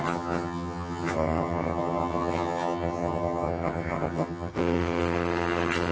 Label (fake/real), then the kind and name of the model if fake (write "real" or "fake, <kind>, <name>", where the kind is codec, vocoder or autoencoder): fake, vocoder, HiFi-GAN